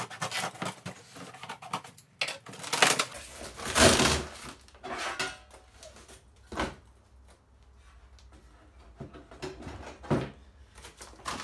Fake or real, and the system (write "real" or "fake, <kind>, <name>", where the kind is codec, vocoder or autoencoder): real